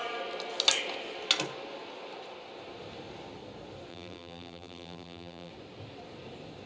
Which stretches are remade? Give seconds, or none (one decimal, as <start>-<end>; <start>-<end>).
3.9-5.5